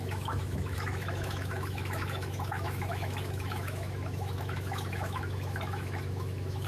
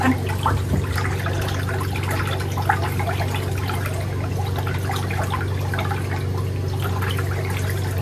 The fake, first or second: first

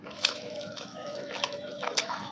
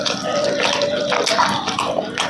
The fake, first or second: first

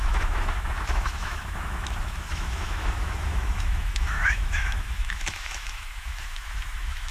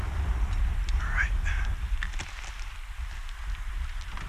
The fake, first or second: first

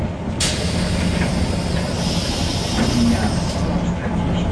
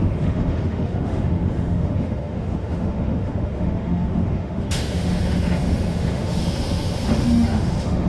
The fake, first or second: second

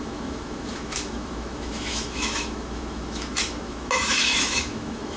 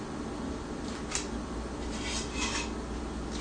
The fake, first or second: first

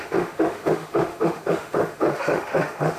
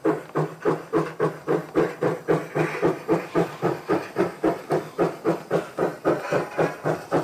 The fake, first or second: first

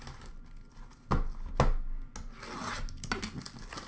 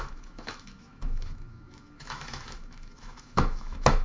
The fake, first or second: second